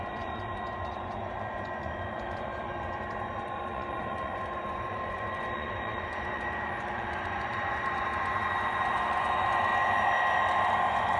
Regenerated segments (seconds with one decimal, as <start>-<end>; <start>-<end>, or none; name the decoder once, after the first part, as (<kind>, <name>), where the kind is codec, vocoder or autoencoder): 0.0-9.7 (vocoder, Vocos); 10.7-11.2